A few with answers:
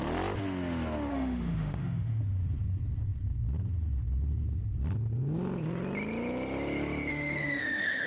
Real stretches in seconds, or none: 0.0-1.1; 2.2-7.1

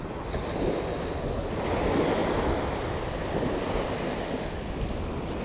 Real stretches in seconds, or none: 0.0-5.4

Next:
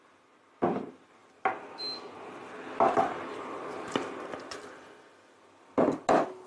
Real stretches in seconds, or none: 0.0-6.5

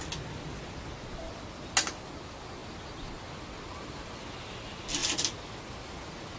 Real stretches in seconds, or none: 0.0-6.4